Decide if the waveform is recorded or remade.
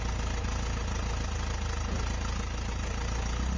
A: recorded